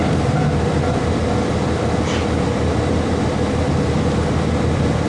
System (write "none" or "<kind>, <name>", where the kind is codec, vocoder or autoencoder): none